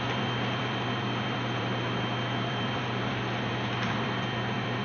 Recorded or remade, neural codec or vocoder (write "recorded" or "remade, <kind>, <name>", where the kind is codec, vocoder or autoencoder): remade, vocoder, BigVGAN v2